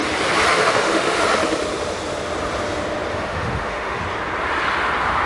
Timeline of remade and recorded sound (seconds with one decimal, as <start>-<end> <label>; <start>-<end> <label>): 0.0-0.5 recorded; 0.5-1.2 remade; 1.2-3.1 recorded; 3.1-4.0 remade; 4.0-5.3 recorded

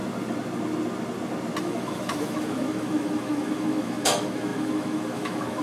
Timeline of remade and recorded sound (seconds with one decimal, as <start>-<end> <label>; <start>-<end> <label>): 0.0-1.6 recorded; 1.6-5.6 remade

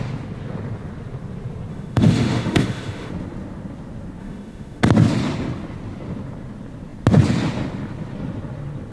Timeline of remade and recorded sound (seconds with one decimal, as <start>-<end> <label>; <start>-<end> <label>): 0.0-1.7 recorded; 1.7-3.1 remade; 3.1-4.2 recorded; 4.2-4.8 remade; 4.8-8.9 recorded

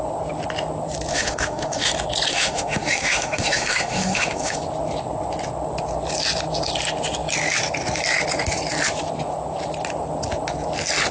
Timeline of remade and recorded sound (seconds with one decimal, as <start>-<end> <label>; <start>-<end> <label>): 0.0-1.1 recorded; 1.1-1.9 remade; 1.9-2.3 recorded; 2.3-4.6 remade; 4.6-11.1 recorded